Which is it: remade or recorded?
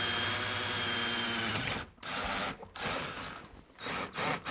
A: recorded